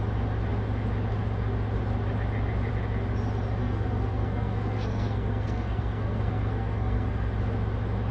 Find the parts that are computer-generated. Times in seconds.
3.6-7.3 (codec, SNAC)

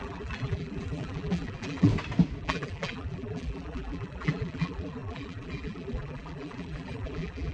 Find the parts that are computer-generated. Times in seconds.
0.0-1.9 (vocoder, BigVGAN v2); 2.4-7.5

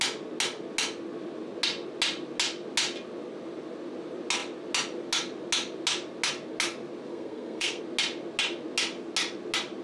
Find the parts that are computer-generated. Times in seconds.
7.1-7.8 (codec, SNAC)

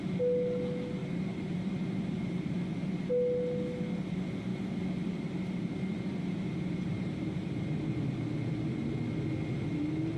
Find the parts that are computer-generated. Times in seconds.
1.0-2.6 (vocoder, BigVGAN v2); 4.5-7.6

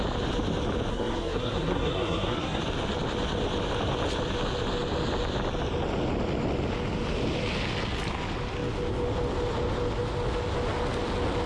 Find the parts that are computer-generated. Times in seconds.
0.9-2.6 (codec, SNAC)

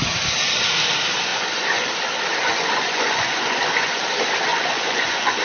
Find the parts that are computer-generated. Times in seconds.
1.3-1.9 (vocoder, Vocos); 2.4-4.0; 4.5-5.4